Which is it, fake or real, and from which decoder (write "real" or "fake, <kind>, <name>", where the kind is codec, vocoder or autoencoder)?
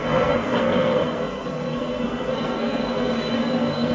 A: fake, codec, SNAC